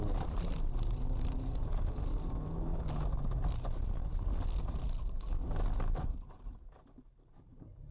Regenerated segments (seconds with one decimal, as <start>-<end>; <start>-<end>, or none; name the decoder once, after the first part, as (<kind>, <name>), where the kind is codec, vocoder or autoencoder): 0.0-2.7 (vocoder, BigVGAN v2); 7.4-7.9